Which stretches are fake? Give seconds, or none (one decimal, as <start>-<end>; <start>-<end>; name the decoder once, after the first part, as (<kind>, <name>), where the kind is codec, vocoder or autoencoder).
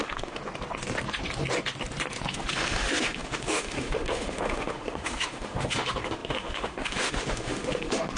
0.0-0.4 (autoencoder, DAC-VAE); 2.3-8.2